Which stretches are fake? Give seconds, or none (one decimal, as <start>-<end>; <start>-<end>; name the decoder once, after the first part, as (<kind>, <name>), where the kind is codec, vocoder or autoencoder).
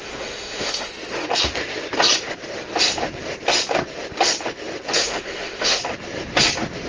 0.0-0.9 (autoencoder, DAC-VAE); 5.0-5.8